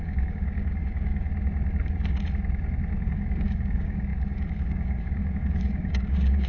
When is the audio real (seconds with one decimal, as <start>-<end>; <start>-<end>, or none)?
1.3-2.9